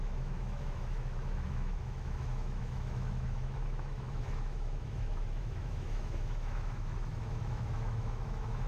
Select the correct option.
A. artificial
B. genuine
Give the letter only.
A